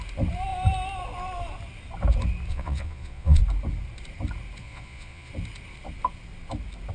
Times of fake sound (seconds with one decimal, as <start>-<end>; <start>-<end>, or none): 2.5-3.4; 4.6-5.3